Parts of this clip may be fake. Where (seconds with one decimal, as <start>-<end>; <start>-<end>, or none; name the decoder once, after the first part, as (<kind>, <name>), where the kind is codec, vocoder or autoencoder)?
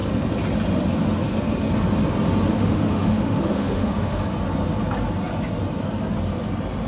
2.5-4.2 (autoencoder, DAC-VAE)